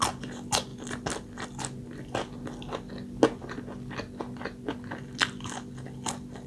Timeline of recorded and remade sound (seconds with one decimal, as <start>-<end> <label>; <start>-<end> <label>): 0.0-6.5 recorded